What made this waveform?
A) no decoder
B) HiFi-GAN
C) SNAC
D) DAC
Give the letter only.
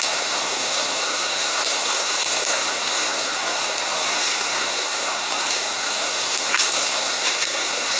C